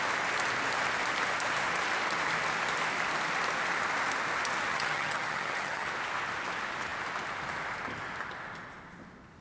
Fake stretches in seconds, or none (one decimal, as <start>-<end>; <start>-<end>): 4.7-5.9